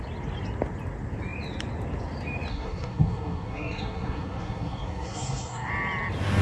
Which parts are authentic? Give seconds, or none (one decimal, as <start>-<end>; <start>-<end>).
0.0-2.5; 5.7-6.4